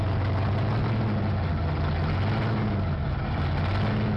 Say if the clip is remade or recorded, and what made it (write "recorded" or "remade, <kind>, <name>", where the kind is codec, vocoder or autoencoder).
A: recorded